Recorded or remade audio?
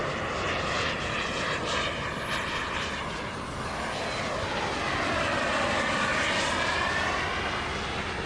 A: recorded